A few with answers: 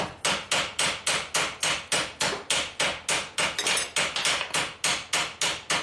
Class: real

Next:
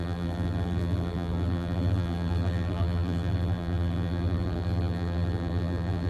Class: fake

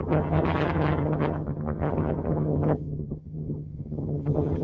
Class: fake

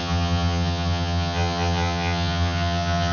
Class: fake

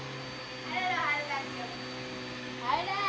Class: real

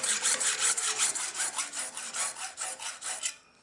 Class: fake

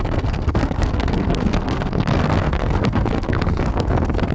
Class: fake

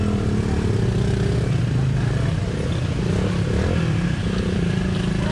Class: real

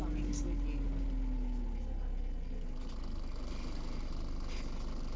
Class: real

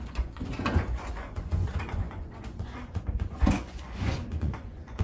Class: fake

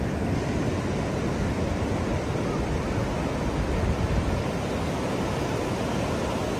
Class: real